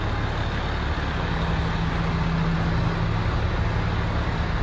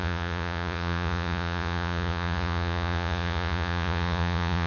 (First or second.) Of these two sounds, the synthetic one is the second